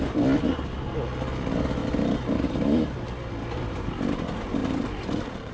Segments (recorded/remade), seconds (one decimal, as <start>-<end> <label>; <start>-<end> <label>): 0.0-1.8 recorded; 1.8-3.3 remade; 3.3-4.6 recorded; 4.6-5.5 remade